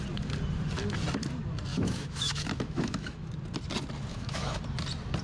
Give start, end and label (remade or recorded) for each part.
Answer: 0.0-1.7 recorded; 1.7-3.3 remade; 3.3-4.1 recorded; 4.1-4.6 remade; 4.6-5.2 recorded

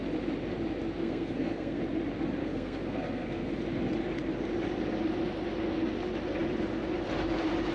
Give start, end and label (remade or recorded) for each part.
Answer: 0.0-1.0 recorded; 1.0-1.8 remade; 1.8-2.4 recorded; 2.4-3.5 remade; 3.5-7.7 recorded